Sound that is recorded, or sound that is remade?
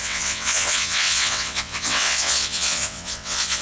remade